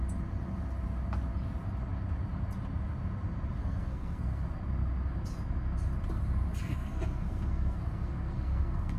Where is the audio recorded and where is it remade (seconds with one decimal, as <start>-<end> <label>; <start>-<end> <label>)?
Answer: 0.0-3.6 recorded; 3.6-4.4 remade; 4.4-6.6 recorded; 6.6-9.0 remade